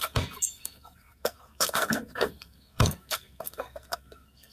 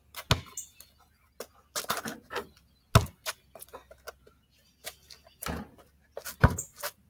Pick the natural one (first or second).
second